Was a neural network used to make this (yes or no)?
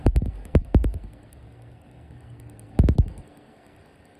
yes